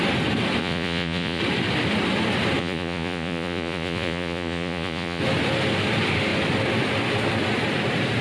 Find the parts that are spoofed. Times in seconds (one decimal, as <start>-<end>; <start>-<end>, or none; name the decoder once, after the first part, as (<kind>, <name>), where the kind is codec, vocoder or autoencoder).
0.6-1.4 (vocoder, Vocos); 2.6-5.2